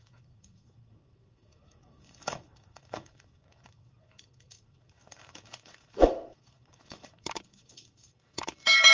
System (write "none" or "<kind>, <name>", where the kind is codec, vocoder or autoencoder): autoencoder, DAC-VAE